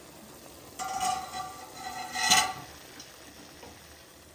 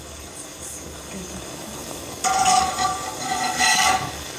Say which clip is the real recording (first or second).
first